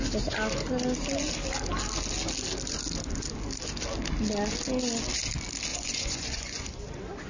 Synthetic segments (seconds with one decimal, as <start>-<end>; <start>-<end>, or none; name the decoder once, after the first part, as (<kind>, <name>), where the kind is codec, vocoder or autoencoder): 5.7-6.7 (vocoder, Vocos)